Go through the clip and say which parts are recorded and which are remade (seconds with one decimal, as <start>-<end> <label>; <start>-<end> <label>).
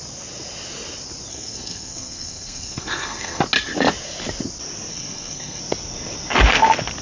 0.0-1.3 recorded; 1.3-3.4 remade; 3.4-4.9 recorded; 4.9-5.6 remade; 5.6-7.0 recorded